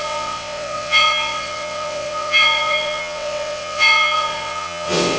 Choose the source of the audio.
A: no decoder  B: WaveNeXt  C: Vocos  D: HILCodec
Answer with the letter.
B